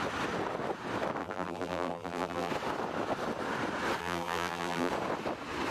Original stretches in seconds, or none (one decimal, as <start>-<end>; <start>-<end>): 0.0-1.2; 2.5-4.0; 4.9-5.7